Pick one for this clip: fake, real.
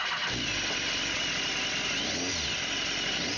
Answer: real